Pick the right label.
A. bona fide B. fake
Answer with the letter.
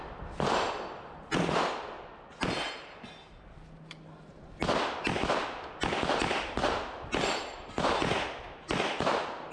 A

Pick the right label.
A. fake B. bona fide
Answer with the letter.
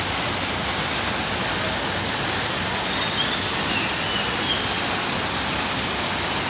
B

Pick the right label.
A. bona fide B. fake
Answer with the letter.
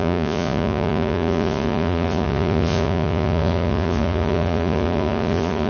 B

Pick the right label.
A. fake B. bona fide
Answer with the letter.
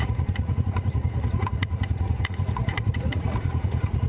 A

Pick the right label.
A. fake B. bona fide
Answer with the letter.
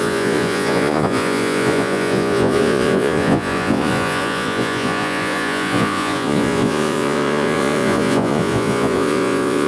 A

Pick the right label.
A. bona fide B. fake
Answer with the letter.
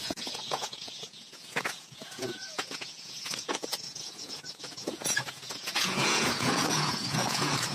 B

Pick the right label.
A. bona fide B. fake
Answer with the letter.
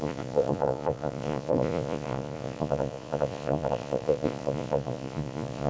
B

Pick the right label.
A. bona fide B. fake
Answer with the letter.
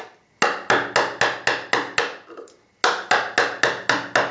A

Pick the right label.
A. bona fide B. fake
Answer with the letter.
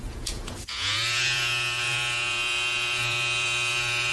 B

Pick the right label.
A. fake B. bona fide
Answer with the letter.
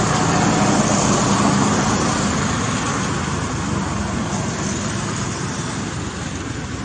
B